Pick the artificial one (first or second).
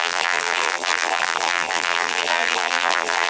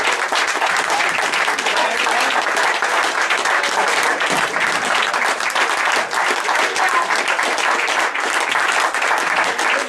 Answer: first